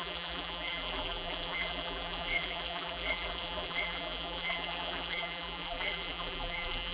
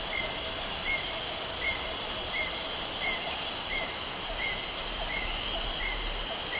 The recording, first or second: second